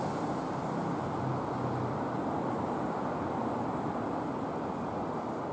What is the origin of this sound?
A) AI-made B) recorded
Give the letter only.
B